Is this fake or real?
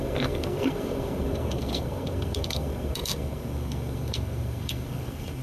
fake